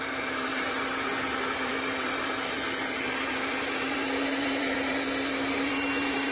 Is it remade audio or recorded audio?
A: remade